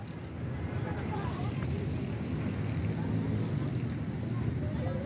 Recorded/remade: recorded